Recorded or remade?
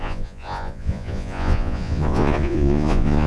remade